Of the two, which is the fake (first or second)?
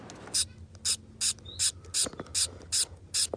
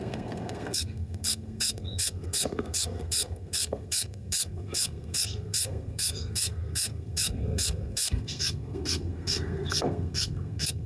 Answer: second